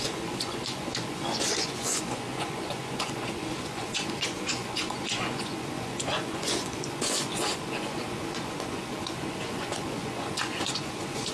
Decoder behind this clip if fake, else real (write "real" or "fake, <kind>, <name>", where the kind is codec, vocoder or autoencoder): fake, vocoder, Vocos